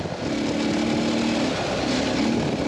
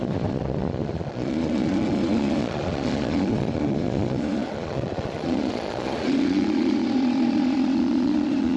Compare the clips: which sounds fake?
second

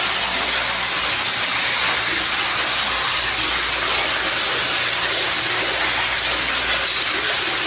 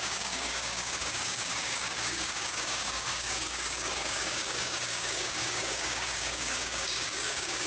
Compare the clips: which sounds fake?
second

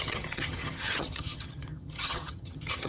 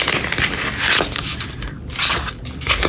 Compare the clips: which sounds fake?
first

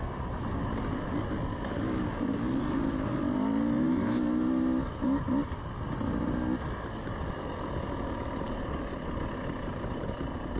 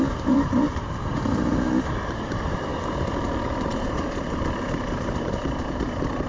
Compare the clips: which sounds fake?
second